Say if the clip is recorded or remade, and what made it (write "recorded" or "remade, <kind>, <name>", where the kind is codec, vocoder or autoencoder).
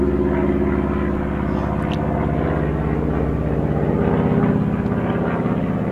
recorded